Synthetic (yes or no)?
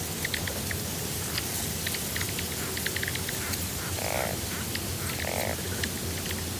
no